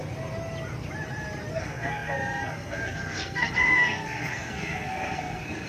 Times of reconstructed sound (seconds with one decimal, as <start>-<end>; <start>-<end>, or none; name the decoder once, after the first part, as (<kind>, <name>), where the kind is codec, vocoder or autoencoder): 1.5-5.7 (codec, SNAC)